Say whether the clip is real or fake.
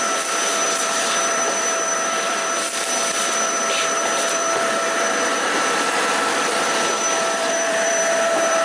fake